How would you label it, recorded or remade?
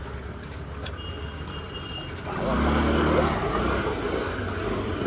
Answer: recorded